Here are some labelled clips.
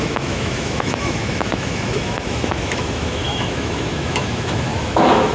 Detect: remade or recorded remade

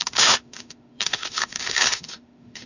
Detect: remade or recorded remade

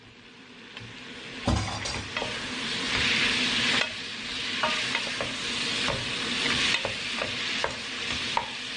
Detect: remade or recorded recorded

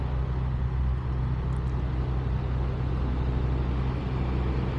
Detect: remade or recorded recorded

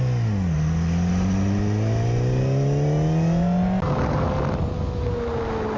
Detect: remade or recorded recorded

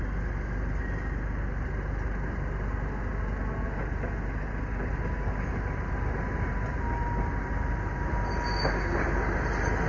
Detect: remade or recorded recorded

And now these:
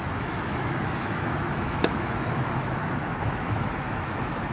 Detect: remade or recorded remade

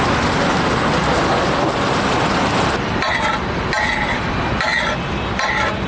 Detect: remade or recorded recorded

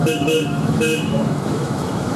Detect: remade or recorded remade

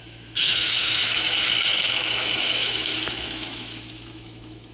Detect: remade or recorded remade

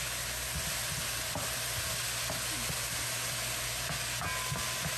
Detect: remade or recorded recorded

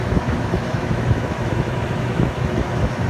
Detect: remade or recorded remade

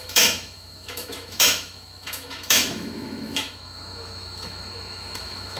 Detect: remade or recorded remade